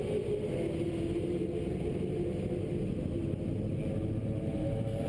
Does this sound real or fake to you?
real